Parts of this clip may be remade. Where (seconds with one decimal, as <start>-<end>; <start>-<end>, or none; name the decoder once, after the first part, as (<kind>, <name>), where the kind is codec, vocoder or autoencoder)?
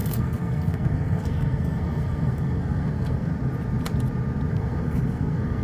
0.0-3.3 (codec, SNAC); 4.5-5.6